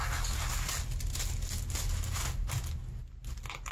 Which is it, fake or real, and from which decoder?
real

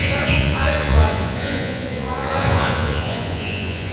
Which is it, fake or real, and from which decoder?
fake, vocoder, Vocos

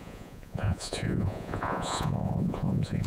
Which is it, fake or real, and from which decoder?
fake, vocoder, Vocos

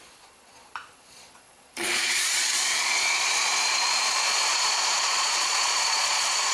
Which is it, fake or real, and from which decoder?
fake, vocoder, Vocos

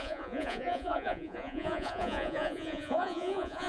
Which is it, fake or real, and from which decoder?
fake, vocoder, Vocos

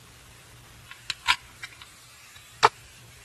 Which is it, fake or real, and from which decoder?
real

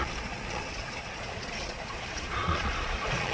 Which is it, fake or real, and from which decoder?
fake, vocoder, Vocos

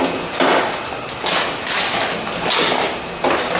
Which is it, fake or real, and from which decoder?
real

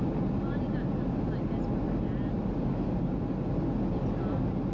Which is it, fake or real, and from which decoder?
real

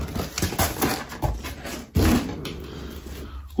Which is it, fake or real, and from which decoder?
real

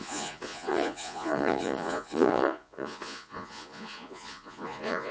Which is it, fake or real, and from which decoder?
fake, vocoder, Vocos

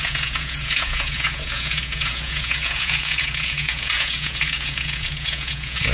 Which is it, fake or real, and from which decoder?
fake, vocoder, Vocos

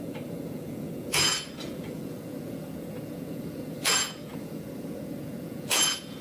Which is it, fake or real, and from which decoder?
fake, vocoder, Vocos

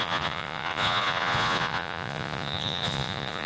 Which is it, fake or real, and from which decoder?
fake, vocoder, Vocos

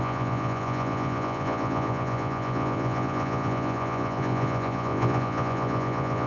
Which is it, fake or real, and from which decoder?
fake, vocoder, Vocos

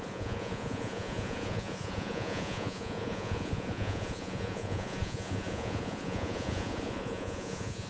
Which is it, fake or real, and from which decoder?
fake, vocoder, Vocos